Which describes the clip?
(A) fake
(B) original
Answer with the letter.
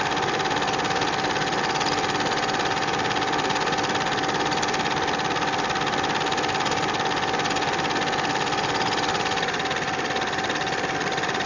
B